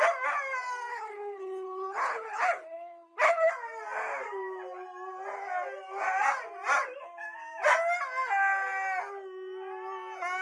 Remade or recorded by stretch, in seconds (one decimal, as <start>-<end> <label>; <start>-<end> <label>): 0.0-0.9 recorded; 0.9-3.5 remade; 3.5-10.4 recorded